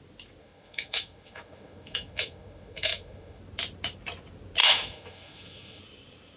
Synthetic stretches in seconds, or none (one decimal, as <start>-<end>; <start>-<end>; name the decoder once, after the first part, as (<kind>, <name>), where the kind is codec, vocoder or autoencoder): 0.4-3.4 (autoencoder, DAC-VAE); 4.6-5.8